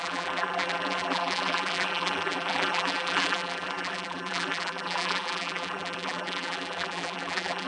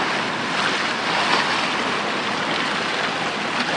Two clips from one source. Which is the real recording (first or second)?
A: second